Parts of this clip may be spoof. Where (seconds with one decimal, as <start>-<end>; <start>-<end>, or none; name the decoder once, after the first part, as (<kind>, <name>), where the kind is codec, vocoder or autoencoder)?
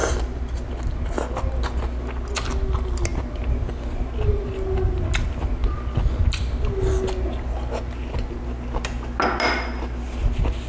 none